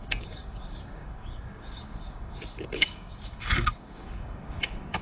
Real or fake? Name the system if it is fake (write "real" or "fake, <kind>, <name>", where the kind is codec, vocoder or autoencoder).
fake, codec, DAC